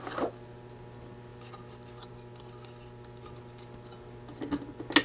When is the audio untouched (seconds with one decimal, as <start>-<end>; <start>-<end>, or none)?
0.0-5.0